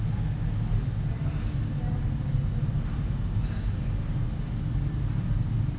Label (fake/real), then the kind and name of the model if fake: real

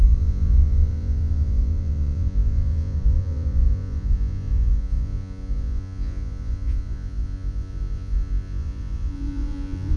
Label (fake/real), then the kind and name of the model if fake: fake, vocoder, Vocos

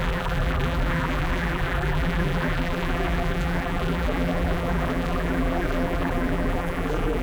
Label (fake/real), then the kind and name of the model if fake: fake, vocoder, BigVGAN v2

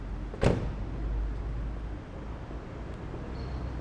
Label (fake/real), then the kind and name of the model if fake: real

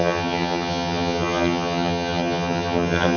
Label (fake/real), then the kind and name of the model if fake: fake, vocoder, HiFi-GAN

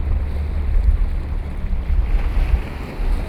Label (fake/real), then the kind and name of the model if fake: real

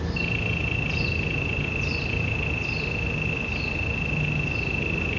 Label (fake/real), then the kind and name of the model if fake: real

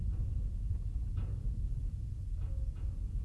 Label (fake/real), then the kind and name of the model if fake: fake, vocoder, Vocos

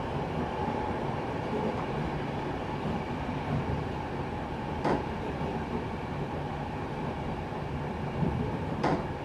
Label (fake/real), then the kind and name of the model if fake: fake, vocoder, BigVGAN v2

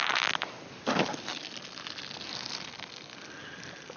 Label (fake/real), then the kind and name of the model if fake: real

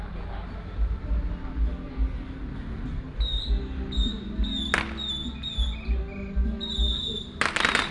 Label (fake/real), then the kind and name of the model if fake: real